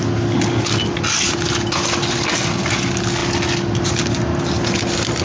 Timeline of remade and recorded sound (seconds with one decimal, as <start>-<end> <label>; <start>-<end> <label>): 0.0-5.2 recorded